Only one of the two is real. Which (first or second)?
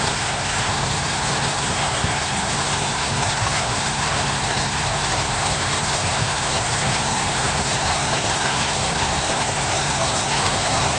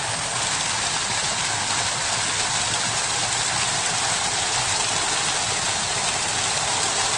second